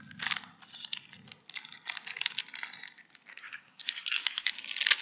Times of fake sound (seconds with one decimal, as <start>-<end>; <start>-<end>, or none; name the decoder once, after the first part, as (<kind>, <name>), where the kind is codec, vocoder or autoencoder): 3.3-4.5 (codec, SNAC)